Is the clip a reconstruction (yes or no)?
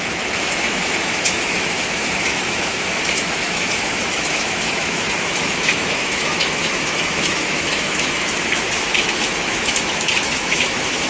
yes